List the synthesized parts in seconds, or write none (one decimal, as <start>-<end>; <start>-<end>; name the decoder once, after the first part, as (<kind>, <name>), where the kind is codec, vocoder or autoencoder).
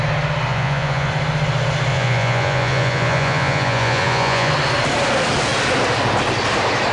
0.5-1.1 (vocoder, Vocos); 1.9-4.5